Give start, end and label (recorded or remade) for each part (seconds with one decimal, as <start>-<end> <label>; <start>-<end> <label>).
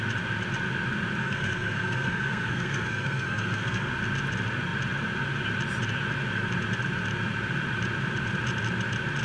0.0-1.2 recorded; 1.2-3.9 remade; 3.9-9.2 recorded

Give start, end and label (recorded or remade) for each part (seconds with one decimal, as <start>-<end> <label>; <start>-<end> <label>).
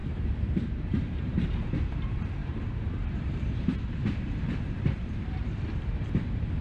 0.0-1.7 remade; 1.7-2.4 recorded; 2.4-5.6 remade; 5.6-6.6 recorded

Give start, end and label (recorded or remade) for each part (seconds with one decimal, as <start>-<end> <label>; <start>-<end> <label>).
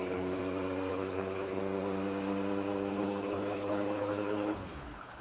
0.0-0.4 remade; 0.4-0.9 recorded; 0.9-1.6 remade; 1.6-2.9 recorded; 2.9-5.2 remade